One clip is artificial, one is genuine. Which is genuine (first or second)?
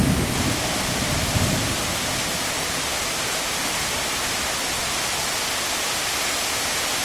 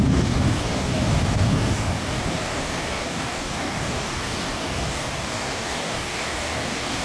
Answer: first